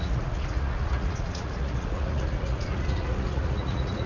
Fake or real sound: fake